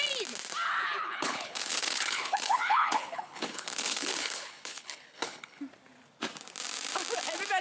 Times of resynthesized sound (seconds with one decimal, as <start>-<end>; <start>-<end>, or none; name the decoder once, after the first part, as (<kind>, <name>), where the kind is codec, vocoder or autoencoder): 1.0-5.6 (codec, HILCodec)